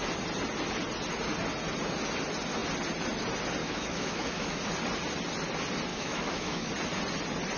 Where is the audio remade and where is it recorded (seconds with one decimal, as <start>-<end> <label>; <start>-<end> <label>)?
0.0-3.6 recorded; 3.6-4.6 remade; 4.6-5.9 recorded; 5.9-6.7 remade; 6.7-7.6 recorded